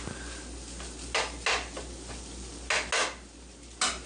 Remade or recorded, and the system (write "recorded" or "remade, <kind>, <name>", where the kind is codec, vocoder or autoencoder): recorded